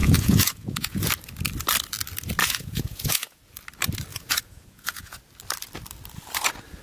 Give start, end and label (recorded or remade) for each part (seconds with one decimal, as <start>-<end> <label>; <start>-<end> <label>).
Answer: 0.0-1.1 remade; 1.1-2.4 recorded; 2.4-3.4 remade; 3.4-4.1 recorded; 4.1-5.2 remade; 5.2-6.8 recorded